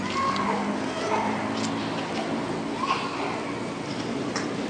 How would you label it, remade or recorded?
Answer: recorded